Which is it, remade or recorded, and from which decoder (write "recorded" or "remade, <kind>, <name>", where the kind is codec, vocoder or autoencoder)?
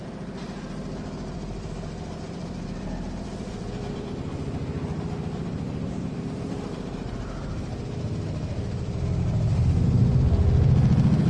remade, vocoder, BigVGAN v2